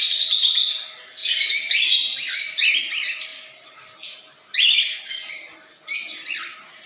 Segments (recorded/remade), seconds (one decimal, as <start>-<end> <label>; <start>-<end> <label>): 0.0-1.2 recorded; 1.2-1.8 remade; 1.8-6.9 recorded